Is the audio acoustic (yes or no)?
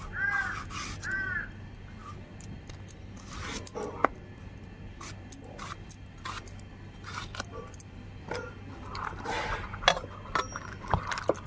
yes